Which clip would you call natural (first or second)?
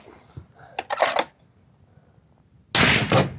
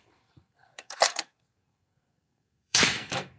first